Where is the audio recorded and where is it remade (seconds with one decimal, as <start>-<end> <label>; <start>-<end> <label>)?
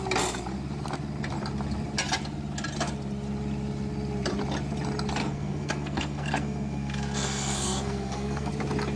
0.0-5.2 recorded; 5.2-8.5 remade; 8.5-9.0 recorded